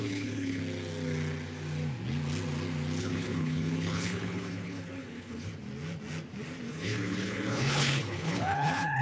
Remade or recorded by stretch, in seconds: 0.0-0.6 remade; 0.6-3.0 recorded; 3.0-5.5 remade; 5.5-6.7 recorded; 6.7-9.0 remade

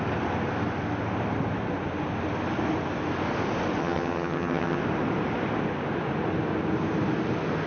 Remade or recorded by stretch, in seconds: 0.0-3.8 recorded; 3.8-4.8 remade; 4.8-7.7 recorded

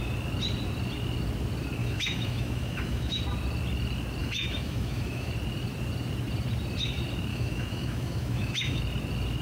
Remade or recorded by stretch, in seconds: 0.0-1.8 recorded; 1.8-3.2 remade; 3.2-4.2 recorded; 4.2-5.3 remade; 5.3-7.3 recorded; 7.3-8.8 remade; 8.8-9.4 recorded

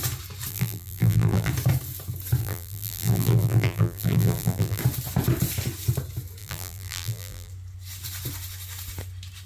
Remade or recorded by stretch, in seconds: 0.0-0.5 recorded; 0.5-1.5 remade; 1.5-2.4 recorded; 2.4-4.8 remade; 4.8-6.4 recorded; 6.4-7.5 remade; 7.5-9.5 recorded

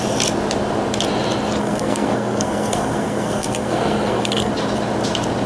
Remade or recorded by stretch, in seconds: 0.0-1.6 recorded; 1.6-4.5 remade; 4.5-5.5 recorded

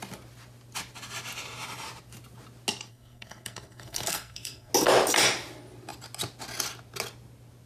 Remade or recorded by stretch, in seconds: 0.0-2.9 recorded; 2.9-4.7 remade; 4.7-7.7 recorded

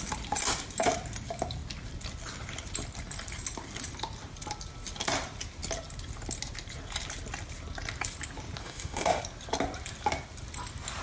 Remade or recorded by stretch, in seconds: 0.0-8.6 recorded; 8.6-9.2 remade; 9.2-11.0 recorded

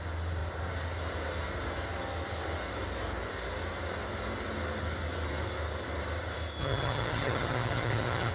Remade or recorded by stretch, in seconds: 0.0-6.6 recorded; 6.6-8.3 remade